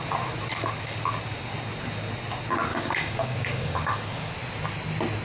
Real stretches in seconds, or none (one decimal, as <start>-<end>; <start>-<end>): 0.0-2.7; 4.3-5.2